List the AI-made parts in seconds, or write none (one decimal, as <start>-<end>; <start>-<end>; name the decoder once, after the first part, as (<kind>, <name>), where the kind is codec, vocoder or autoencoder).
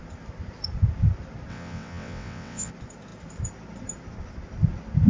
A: 1.5-2.7 (vocoder, WaveNeXt)